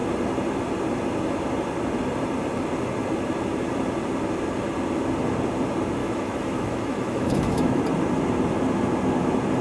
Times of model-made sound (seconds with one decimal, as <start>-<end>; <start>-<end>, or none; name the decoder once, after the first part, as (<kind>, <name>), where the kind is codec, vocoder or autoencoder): 6.0-7.8 (autoencoder, DAC-VAE)